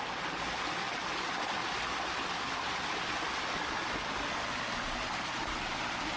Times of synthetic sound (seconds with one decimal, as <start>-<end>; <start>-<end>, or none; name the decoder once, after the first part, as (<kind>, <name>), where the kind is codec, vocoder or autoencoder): none